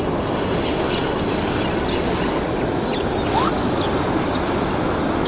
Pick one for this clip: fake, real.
real